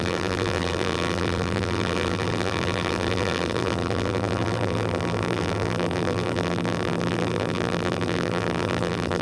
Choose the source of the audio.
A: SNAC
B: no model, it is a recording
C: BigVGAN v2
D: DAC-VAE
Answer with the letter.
C